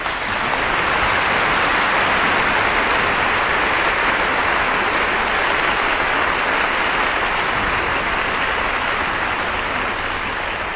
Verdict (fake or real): real